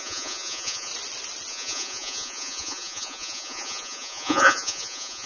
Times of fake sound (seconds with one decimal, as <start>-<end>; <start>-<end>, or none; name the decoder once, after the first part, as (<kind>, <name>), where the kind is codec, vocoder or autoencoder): 0.0-0.9 (vocoder, Vocos); 1.5-5.3

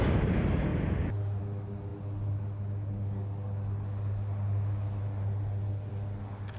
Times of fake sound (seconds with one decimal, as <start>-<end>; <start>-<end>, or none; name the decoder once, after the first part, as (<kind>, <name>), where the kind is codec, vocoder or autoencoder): none

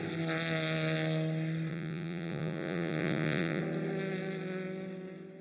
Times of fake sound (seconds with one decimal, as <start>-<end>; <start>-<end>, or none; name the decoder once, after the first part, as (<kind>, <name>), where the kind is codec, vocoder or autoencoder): 1.7-3.6 (vocoder, Vocos)

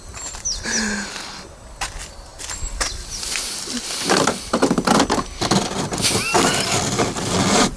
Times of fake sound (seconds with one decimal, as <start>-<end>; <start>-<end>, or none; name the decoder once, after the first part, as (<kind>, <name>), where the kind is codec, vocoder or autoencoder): none

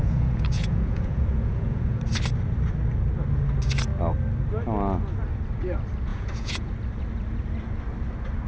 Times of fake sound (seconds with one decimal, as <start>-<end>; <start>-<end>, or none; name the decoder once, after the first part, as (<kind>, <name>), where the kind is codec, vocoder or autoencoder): 0.0-2.0 (vocoder, Vocos); 6.1-6.7